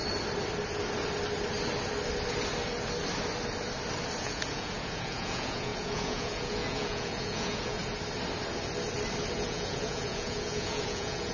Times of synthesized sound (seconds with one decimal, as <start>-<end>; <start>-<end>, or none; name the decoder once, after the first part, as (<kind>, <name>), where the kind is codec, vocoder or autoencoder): 4.2-7.8 (vocoder, Vocos); 9.3-11.3